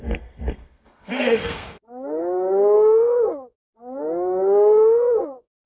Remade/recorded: remade